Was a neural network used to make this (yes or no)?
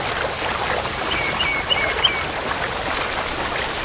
no